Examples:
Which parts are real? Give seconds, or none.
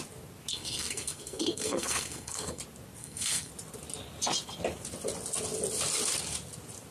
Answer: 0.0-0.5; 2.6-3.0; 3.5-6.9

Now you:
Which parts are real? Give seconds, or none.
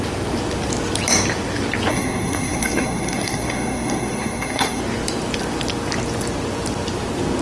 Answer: 0.0-1.9; 4.8-7.4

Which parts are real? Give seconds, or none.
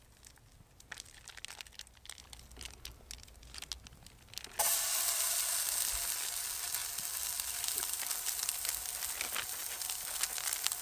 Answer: 0.0-10.8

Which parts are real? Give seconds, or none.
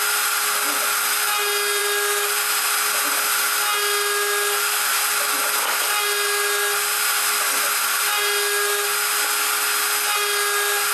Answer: 0.0-10.9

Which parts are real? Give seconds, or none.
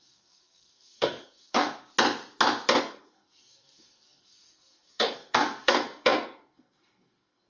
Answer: 1.9-2.8